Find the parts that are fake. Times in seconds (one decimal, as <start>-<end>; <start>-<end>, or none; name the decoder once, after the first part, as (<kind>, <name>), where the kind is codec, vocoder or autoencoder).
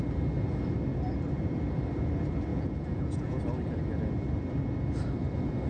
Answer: 2.5-3.4 (vocoder, Vocos)